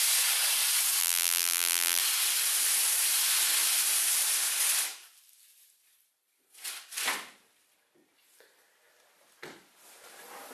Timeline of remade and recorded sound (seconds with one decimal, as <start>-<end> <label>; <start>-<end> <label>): 0.0-1.0 recorded; 1.0-2.0 remade; 2.0-10.5 recorded